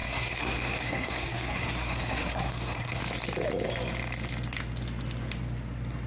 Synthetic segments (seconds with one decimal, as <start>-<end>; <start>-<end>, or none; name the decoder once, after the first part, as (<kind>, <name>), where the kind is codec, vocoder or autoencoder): 0.0-3.0 (codec, SNAC)